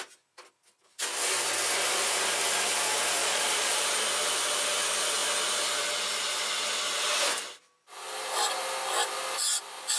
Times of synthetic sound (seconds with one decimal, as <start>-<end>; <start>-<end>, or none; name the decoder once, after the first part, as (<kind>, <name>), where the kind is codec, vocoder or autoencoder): 3.2-3.8 (vocoder, Vocos)